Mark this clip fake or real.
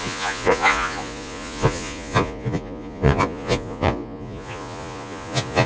fake